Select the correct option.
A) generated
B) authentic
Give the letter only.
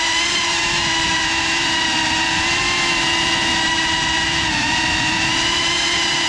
A